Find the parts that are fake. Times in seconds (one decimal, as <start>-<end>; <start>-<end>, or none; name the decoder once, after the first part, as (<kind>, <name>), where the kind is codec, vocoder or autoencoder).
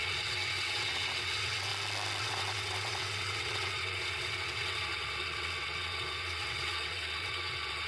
0.0-1.7 (vocoder, WaveNeXt); 2.2-7.9